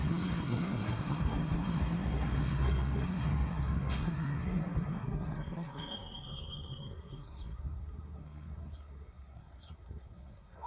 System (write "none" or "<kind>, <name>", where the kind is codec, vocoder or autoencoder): codec, SNAC